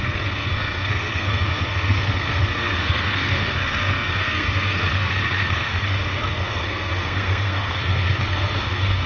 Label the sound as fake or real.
fake